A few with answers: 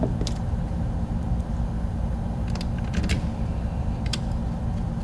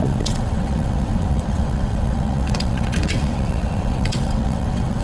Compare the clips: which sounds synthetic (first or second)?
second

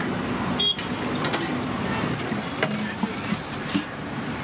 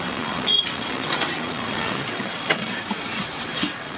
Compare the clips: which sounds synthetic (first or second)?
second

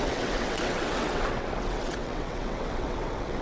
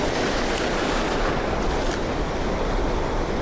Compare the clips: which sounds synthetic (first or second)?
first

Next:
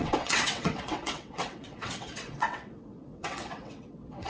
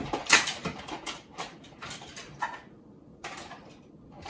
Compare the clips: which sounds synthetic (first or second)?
first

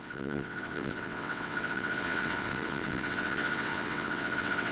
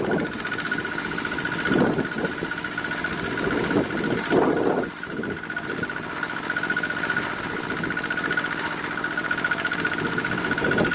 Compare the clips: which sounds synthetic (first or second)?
first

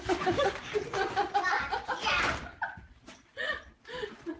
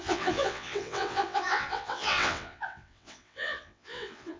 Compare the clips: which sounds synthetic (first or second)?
second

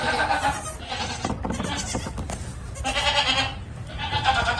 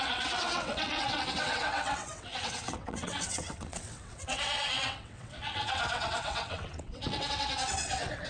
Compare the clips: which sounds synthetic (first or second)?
second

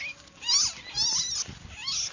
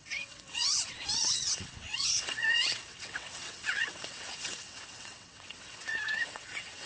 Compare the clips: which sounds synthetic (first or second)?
second